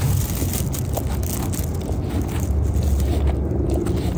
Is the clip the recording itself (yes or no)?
yes